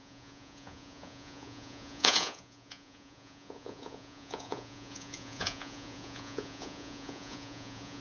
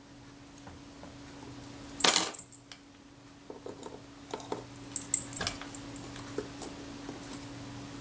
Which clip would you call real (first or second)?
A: second